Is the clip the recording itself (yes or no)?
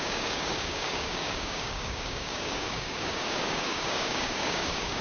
no